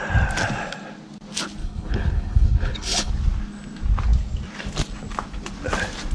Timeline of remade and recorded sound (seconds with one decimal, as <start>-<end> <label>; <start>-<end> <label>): 0.0-1.6 recorded; 1.6-3.1 remade; 3.1-6.1 recorded

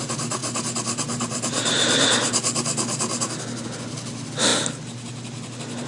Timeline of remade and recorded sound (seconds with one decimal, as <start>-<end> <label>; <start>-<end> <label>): 0.0-5.9 recorded

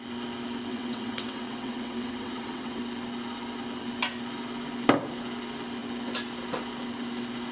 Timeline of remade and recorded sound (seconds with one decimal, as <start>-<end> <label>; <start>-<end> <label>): 0.0-0.7 recorded; 0.7-2.8 remade; 2.8-7.5 recorded